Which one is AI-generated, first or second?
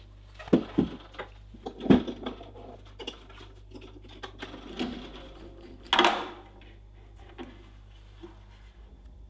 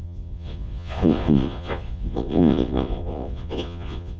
second